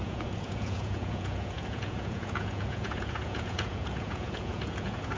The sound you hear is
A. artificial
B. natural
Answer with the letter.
A